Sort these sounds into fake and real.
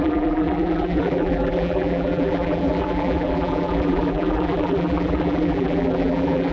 fake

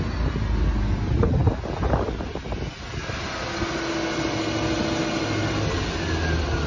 real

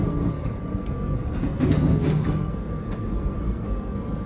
fake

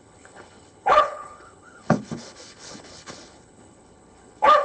fake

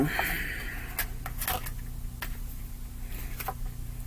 real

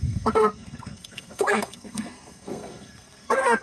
fake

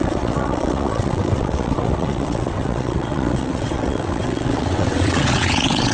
fake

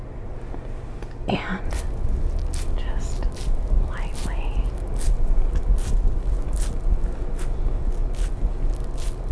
real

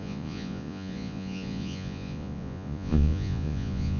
fake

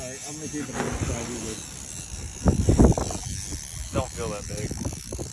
real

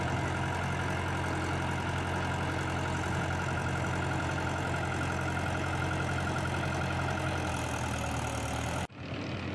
real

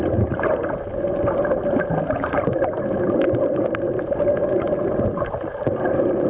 real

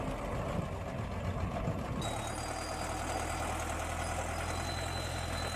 real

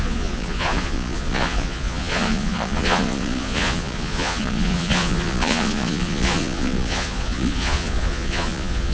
fake